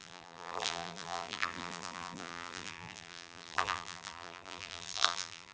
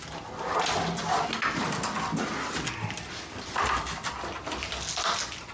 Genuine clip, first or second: second